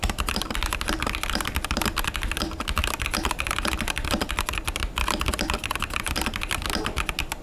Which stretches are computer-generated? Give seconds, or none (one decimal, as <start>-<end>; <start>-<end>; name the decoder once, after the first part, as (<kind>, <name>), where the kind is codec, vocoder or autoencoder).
none